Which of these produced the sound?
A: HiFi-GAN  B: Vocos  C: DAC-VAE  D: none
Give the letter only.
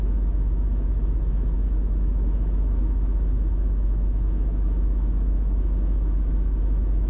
C